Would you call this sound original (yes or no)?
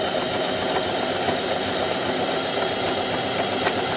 yes